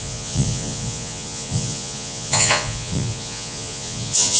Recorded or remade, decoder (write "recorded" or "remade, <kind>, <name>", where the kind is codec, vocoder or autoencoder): remade, vocoder, Vocos